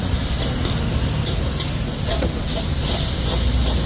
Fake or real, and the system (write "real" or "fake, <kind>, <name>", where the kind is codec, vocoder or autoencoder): real